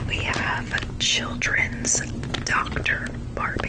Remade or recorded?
recorded